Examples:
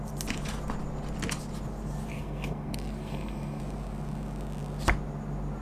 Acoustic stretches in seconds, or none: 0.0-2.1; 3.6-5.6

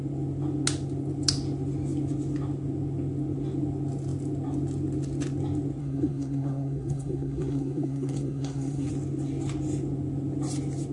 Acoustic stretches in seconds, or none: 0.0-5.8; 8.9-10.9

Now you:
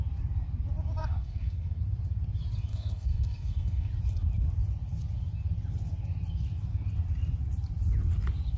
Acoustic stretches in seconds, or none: 0.0-1.0; 1.8-2.7; 3.9-8.6